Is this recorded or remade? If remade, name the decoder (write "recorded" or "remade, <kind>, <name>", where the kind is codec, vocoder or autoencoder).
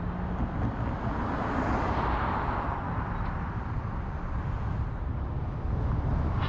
recorded